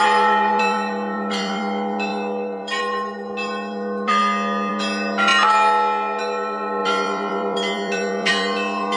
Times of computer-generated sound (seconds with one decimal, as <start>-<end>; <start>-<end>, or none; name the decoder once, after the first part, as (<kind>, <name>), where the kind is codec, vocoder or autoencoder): 0.0-4.2 (vocoder, BigVGAN v2); 4.7-5.3; 6.2-9.0